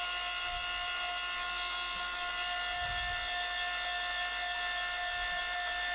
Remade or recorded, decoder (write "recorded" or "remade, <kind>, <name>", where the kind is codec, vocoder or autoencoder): recorded